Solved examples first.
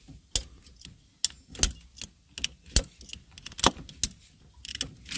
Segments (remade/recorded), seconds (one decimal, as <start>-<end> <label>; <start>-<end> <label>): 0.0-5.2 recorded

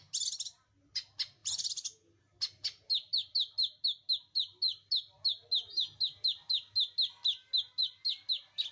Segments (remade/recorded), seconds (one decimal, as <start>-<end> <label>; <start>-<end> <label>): 0.0-8.7 recorded

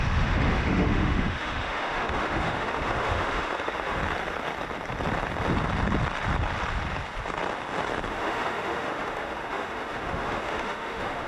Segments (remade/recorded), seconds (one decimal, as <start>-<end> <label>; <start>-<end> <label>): 0.0-4.0 remade; 4.0-8.1 recorded; 8.1-11.3 remade

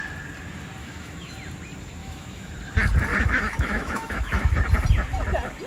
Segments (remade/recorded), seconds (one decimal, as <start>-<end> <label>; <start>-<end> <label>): 0.0-0.8 recorded; 0.8-1.3 remade; 1.3-2.0 recorded; 2.0-2.5 remade; 2.5-3.1 recorded; 3.1-4.5 remade; 4.5-5.7 recorded

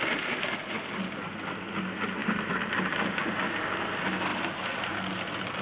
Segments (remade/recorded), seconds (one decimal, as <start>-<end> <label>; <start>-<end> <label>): 0.0-5.6 recorded